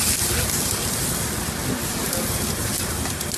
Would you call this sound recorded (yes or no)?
yes